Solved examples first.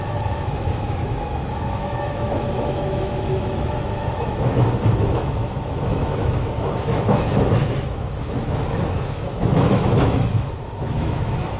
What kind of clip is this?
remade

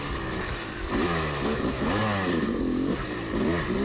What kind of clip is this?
recorded